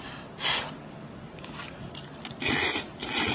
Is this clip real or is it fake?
real